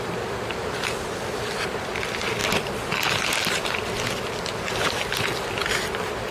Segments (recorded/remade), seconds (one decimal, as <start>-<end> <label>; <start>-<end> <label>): 0.0-6.3 recorded